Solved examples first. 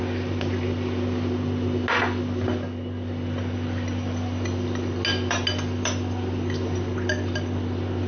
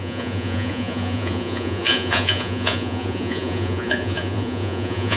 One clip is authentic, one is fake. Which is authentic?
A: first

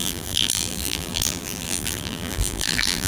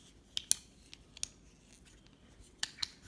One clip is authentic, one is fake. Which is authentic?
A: second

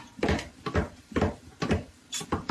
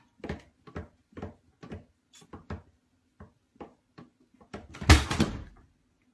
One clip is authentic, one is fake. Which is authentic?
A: second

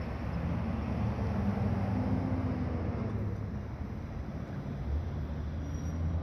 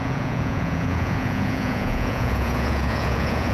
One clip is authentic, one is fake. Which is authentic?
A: first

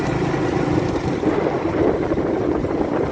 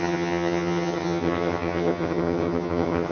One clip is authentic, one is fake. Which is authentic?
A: first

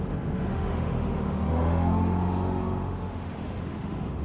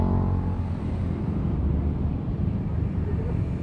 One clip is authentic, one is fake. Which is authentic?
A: second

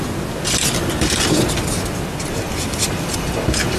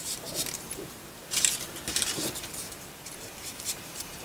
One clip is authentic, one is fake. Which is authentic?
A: first